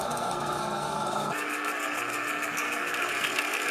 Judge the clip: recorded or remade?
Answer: remade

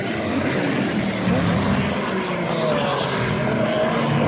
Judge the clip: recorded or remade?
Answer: recorded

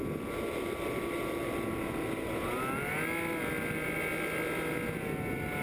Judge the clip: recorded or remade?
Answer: recorded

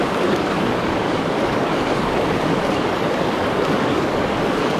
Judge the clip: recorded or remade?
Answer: remade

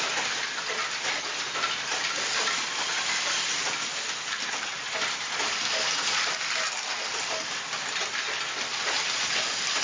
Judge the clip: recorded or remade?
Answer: recorded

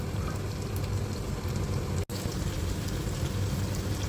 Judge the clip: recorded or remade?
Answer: recorded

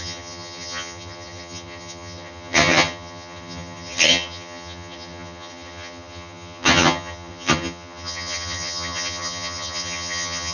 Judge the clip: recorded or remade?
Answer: remade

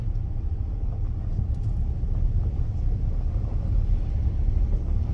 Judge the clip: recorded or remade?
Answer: recorded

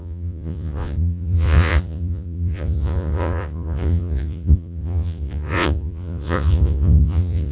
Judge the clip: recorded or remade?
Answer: remade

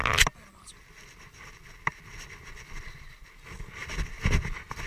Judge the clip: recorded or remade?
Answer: recorded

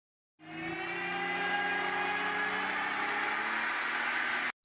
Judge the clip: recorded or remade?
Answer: recorded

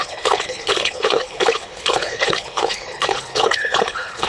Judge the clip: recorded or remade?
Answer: remade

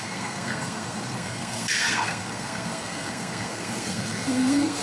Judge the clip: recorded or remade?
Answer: remade